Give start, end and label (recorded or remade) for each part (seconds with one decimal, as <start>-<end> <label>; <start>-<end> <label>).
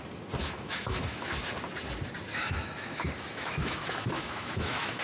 0.0-0.4 recorded; 0.4-1.3 remade; 1.3-2.3 recorded; 2.3-5.0 remade